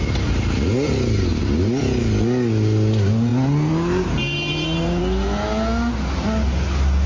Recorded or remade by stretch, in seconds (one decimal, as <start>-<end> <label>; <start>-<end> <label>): 0.0-7.1 recorded